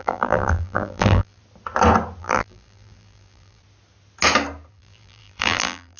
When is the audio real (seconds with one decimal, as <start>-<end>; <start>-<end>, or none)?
1.4-2.2; 3.6-4.7